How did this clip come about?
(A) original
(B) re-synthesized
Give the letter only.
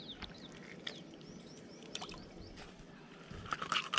A